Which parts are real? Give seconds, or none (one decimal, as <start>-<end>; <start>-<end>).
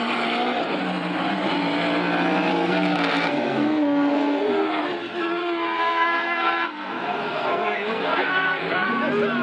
0.0-2.5; 4.8-5.4; 8.9-9.4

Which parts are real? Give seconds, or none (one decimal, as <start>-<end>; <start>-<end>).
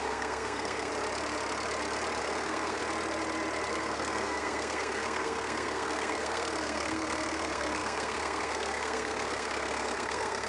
0.9-2.2; 2.8-3.7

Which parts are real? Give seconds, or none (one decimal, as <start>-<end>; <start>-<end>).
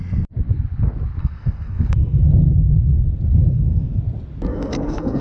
0.0-1.2; 2.2-3.4; 4.0-4.5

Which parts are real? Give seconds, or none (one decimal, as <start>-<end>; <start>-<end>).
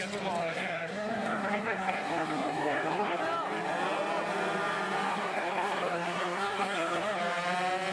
0.0-0.4; 3.2-5.1; 7.2-7.9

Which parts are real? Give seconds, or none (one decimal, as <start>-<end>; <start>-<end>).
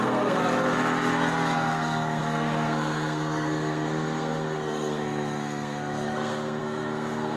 0.4-1.1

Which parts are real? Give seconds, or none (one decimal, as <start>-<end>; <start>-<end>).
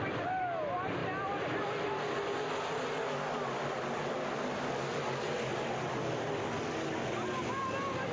0.0-8.1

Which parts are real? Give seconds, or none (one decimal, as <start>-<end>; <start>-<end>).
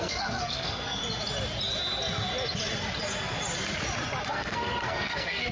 1.0-4.3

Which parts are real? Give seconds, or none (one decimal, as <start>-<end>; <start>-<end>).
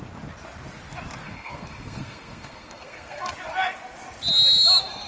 0.0-1.2; 3.3-5.1